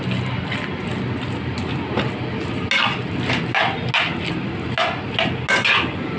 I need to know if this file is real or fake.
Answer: real